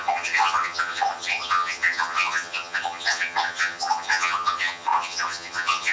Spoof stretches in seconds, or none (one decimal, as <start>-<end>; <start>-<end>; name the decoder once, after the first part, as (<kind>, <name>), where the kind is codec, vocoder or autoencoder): 0.0-5.9 (vocoder, HiFi-GAN)